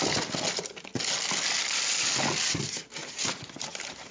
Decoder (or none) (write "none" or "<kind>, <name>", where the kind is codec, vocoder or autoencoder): none